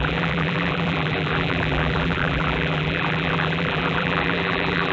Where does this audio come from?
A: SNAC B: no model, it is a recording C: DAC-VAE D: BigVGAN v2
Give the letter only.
D